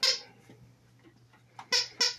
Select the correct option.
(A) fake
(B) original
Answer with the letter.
B